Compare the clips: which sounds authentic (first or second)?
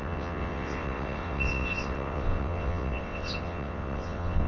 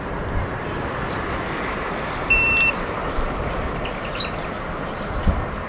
second